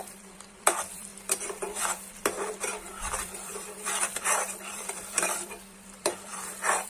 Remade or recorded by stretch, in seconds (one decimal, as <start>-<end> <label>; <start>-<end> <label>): 0.0-6.9 remade